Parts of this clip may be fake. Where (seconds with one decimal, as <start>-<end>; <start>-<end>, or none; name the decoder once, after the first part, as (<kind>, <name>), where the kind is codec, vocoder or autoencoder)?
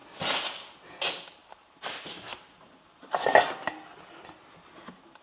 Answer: 1.4-3.1 (vocoder, BigVGAN v2)